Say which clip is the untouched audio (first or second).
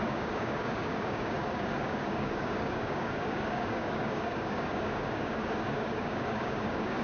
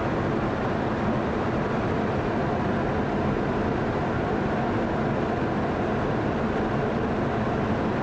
second